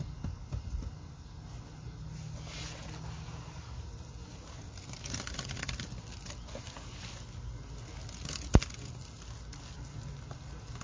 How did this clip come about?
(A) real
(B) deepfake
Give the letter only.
A